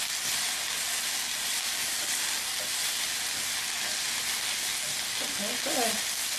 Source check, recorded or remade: recorded